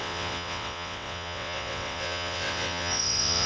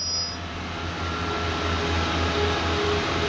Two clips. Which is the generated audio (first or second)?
first